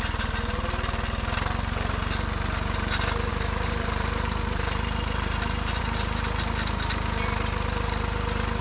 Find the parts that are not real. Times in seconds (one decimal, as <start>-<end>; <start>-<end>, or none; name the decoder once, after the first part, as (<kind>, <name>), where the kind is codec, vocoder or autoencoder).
3.3-5.8 (vocoder, BigVGAN v2)